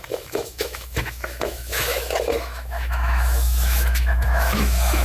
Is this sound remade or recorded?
remade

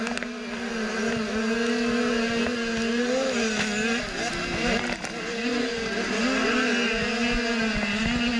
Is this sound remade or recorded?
recorded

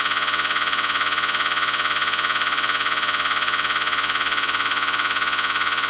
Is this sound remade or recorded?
remade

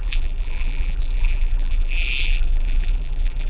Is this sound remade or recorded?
remade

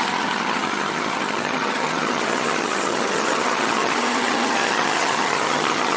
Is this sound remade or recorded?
remade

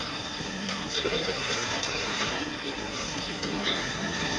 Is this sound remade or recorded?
remade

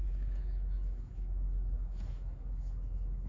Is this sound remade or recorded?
remade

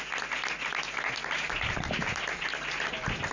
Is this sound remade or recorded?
recorded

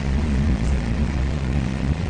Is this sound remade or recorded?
remade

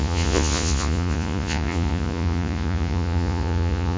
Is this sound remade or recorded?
remade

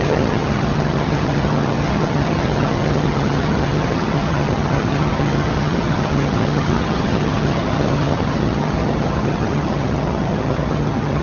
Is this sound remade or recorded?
remade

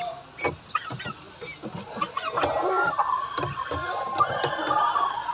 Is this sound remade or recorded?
recorded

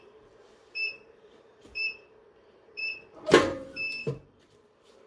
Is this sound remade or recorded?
remade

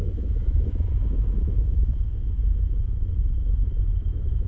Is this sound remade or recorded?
remade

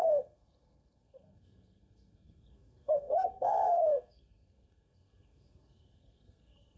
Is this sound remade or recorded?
remade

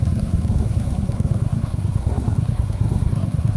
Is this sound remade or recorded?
remade